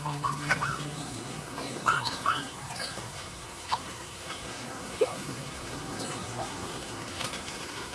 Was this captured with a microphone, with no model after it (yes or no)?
no